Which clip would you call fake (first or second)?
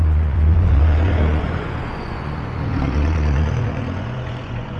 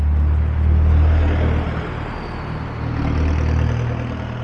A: first